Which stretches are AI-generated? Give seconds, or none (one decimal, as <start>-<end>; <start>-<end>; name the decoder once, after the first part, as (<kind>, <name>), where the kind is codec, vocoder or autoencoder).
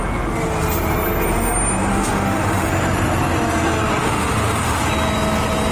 1.9-2.7 (autoencoder, DAC-VAE); 4.0-4.8